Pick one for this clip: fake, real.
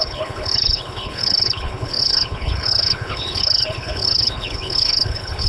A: fake